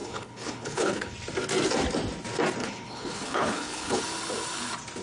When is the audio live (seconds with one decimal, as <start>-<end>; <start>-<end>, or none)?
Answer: 1.1-2.6; 4.0-5.0